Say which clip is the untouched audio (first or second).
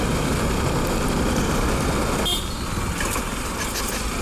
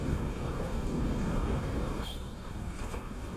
first